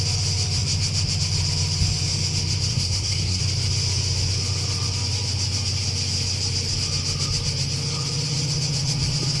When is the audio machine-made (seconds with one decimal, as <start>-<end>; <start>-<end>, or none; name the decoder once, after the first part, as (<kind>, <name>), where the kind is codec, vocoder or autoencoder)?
2.7-3.4 (codec, SNAC)